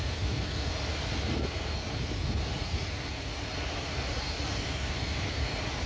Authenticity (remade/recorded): recorded